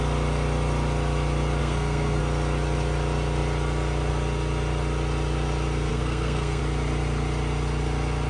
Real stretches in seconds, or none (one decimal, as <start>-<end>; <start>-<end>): 0.0-1.6; 2.2-5.9; 6.6-8.3

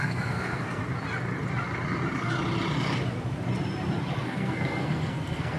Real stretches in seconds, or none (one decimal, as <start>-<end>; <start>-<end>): 0.8-4.2

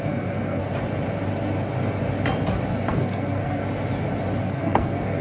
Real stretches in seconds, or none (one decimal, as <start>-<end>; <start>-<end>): 0.6-2.9; 3.6-4.4

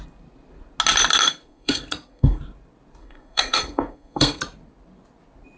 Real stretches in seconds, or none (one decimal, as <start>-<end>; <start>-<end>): 0.0-1.2; 2.4-3.0; 4.4-5.6

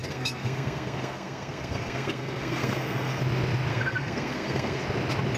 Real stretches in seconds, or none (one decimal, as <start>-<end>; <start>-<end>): 3.2-3.7; 4.8-5.4

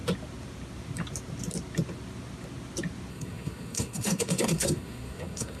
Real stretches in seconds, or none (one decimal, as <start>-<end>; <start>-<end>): 0.0-3.1

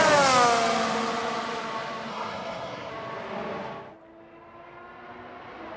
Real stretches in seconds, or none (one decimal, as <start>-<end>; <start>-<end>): 0.0-2.1; 2.9-5.8

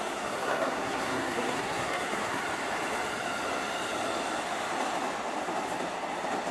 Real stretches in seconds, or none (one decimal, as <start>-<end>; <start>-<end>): 2.4-6.5